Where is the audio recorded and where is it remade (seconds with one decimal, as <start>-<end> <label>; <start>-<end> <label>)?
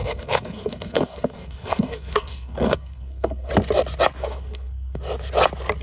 0.0-3.5 remade; 3.5-4.2 recorded; 4.2-5.0 remade; 5.0-5.8 recorded